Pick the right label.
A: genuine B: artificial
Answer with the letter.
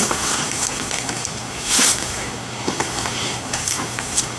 B